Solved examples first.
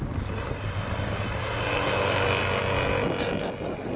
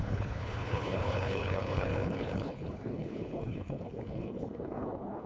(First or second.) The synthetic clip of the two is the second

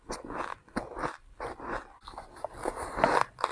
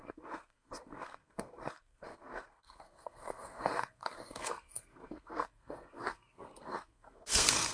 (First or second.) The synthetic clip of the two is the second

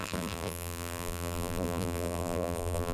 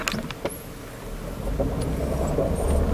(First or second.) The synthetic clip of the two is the first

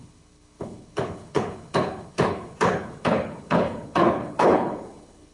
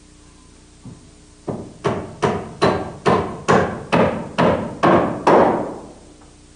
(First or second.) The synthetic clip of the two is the first